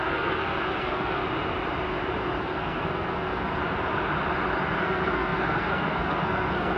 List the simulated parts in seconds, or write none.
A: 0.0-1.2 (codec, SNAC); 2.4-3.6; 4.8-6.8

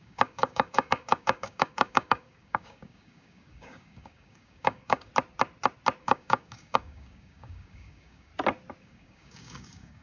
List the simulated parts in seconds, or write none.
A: 0.0-5.1 (codec, DAC); 6.0-8.3; 8.8-10.0

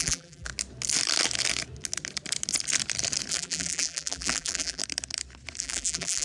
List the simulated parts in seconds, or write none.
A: 0.0-0.5 (vocoder, BigVGAN v2); 3.3-4.8; 5.6-6.2

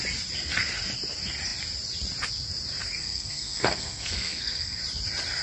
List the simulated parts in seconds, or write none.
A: 3.0-4.8 (codec, SNAC)

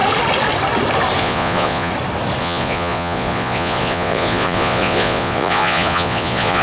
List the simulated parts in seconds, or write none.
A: 1.2-1.9 (vocoder, Vocos); 2.4-6.6

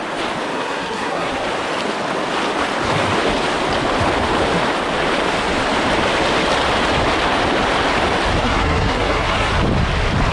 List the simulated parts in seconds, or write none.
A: 0.5-1.3 (codec, SNAC); 8.4-9.5